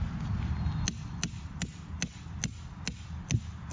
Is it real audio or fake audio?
real